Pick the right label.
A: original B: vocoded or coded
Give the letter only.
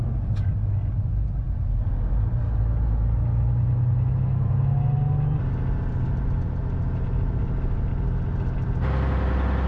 A